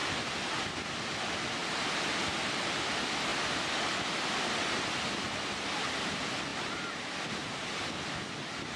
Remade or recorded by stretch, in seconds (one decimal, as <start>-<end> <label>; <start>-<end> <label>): 0.0-1.6 recorded; 1.6-2.9 remade; 2.9-3.3 recorded; 3.3-5.4 remade; 5.4-6.5 recorded; 6.5-7.2 remade; 7.2-8.8 recorded